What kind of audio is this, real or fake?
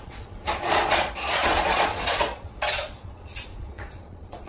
fake